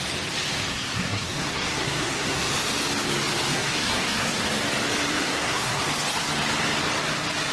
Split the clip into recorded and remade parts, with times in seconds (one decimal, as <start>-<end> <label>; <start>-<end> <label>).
0.0-0.7 recorded; 0.7-2.5 remade; 2.5-3.5 recorded; 3.5-4.4 remade; 4.4-5.1 recorded; 5.1-5.8 remade; 5.8-7.5 recorded